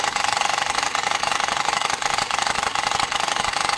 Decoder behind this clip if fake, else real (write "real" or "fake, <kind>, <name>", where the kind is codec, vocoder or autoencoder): fake, codec, DAC